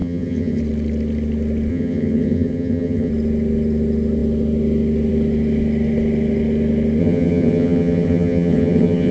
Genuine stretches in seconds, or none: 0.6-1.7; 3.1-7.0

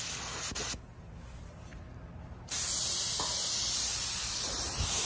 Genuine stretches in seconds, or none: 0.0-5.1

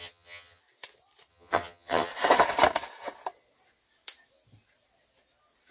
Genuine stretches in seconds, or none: 0.6-1.3; 2.1-5.7

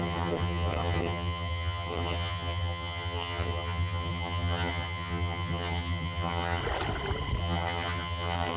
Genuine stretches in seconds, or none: 6.6-7.4

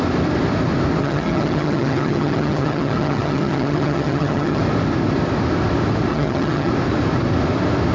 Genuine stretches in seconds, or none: 0.0-1.0; 4.6-6.1; 6.7-7.9

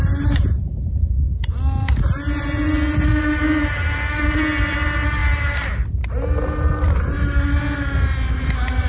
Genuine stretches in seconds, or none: 0.0-8.9